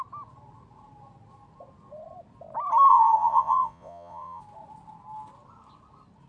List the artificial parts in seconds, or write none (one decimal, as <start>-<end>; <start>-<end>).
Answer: 2.9-4.4